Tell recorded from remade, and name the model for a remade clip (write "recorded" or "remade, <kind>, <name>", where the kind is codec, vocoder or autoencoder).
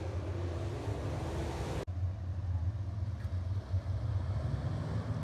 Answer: recorded